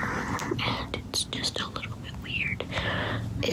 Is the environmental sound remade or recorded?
recorded